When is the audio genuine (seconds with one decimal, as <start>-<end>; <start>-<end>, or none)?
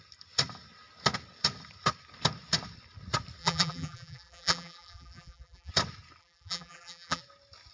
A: 0.0-3.4; 5.7-6.2; 7.2-7.7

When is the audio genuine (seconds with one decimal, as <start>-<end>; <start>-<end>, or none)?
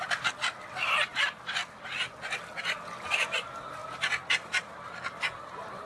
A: 0.0-5.9